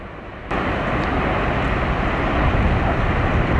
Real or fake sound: real